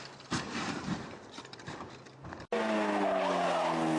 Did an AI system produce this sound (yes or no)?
no